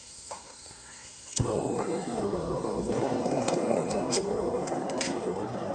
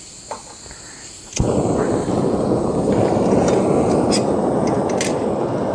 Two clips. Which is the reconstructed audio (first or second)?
first